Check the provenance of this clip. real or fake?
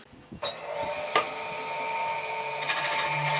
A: real